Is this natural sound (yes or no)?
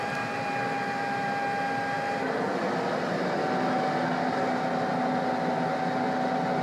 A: yes